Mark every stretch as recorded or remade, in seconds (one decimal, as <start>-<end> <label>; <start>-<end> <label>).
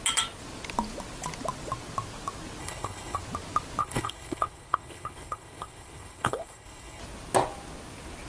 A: 0.0-2.6 recorded; 2.6-3.2 remade; 3.2-3.8 recorded; 3.8-7.0 remade; 7.0-8.3 recorded